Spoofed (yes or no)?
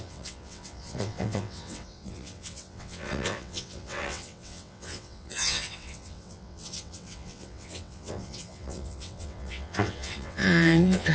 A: yes